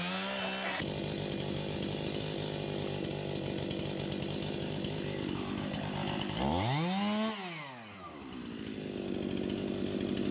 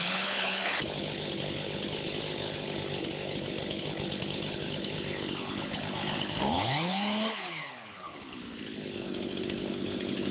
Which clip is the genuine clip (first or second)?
first